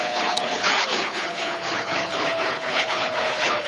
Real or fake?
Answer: fake